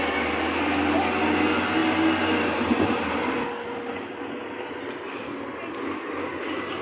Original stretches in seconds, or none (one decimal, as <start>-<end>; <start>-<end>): 0.0-6.8